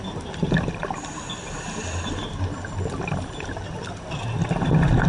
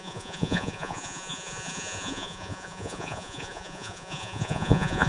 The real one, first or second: first